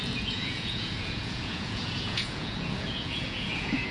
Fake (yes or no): yes